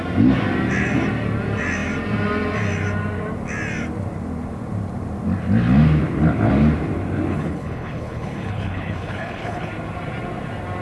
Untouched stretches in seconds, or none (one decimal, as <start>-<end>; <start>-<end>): 0.0-7.3; 9.7-10.8